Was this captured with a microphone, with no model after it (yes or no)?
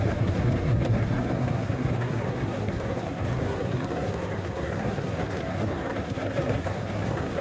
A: no